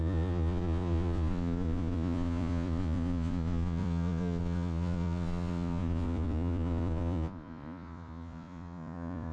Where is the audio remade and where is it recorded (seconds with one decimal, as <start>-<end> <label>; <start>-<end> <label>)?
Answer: 0.0-9.3 remade